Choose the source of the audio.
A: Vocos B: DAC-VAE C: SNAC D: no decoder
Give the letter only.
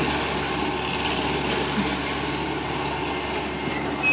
D